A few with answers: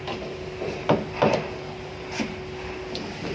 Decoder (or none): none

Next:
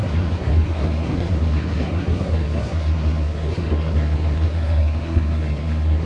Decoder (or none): codec, SNAC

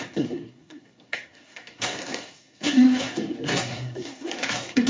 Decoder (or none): codec, SNAC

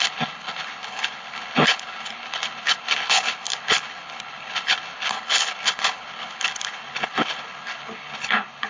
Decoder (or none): codec, HILCodec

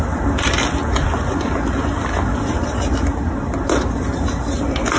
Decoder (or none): none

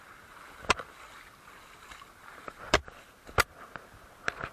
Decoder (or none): none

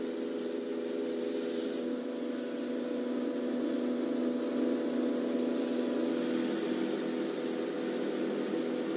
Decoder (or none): none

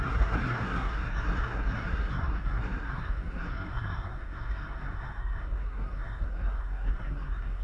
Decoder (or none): codec, SNAC